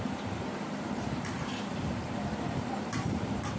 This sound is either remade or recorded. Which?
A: remade